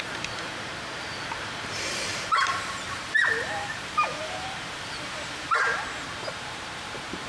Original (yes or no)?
no